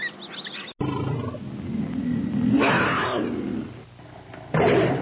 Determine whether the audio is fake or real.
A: real